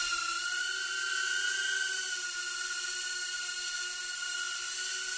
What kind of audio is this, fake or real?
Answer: real